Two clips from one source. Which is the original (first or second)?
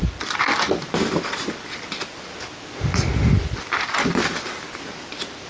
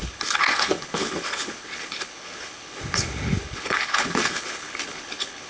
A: first